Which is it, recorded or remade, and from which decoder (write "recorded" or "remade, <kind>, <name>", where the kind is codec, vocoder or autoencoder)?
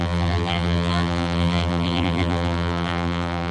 remade, vocoder, BigVGAN v2